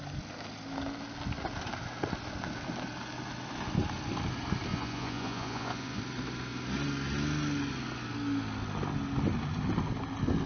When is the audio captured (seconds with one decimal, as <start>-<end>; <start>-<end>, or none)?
0.0-4.7; 6.0-10.5